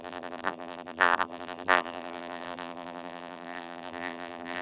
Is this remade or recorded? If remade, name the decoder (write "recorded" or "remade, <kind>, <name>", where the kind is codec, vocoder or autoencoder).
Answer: remade, vocoder, BigVGAN v2